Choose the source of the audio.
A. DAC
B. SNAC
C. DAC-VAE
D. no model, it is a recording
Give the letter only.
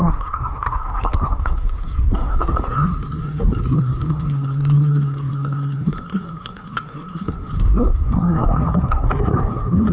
B